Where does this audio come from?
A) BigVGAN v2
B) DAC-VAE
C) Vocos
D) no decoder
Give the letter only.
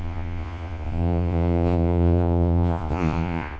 C